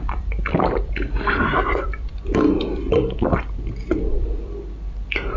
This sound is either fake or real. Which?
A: fake